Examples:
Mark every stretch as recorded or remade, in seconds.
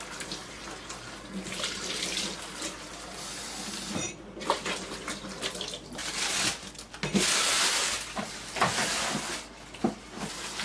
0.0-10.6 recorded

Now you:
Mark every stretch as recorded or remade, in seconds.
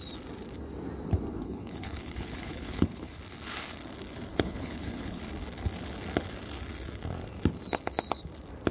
0.0-1.3 recorded; 1.3-3.2 remade; 3.2-4.3 recorded; 4.3-5.2 remade; 5.2-8.7 recorded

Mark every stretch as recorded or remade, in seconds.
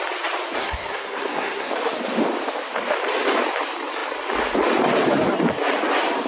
0.0-0.6 recorded; 0.6-1.7 remade; 1.7-6.3 recorded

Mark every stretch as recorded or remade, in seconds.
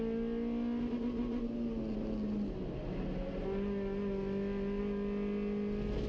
0.0-6.1 recorded